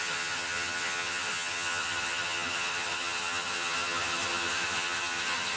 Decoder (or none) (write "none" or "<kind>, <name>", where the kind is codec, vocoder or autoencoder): vocoder, HiFi-GAN